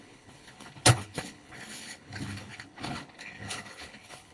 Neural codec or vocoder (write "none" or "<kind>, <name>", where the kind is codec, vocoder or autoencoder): codec, HILCodec